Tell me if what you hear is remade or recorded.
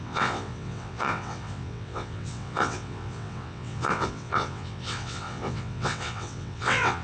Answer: remade